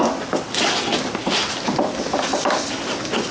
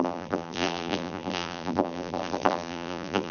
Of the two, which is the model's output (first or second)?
second